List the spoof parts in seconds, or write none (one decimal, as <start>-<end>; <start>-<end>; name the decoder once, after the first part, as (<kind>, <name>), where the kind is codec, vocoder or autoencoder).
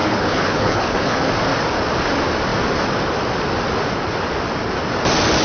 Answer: 0.0-1.3 (codec, HILCodec)